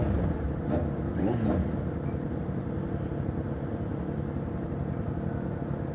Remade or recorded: recorded